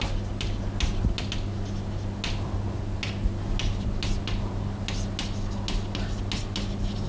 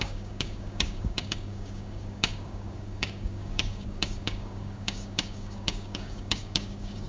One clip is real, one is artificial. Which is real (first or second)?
first